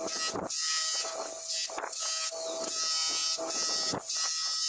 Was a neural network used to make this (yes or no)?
no